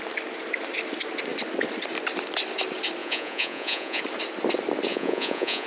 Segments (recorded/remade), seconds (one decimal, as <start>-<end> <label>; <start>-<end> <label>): 0.0-3.0 recorded; 3.0-4.0 remade; 4.0-4.9 recorded; 4.9-5.7 remade